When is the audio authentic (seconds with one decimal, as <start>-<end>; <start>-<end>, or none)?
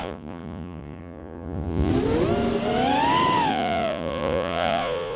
1.9-3.5